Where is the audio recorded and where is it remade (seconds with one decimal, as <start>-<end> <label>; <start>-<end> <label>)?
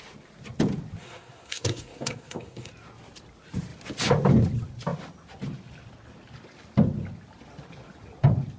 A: 0.0-1.0 recorded; 1.0-2.7 remade; 2.7-8.6 recorded